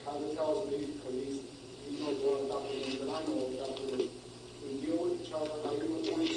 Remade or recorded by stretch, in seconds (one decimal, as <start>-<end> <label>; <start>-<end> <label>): 0.0-2.3 remade; 2.3-6.4 recorded